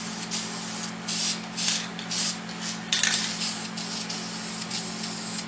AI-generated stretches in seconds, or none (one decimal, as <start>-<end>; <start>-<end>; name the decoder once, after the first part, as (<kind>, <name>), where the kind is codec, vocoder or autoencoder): none